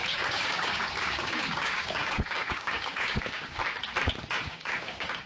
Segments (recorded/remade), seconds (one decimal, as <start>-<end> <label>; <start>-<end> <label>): 0.0-3.6 remade; 3.6-4.2 recorded; 4.2-5.3 remade